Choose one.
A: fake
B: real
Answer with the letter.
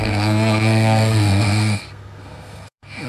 A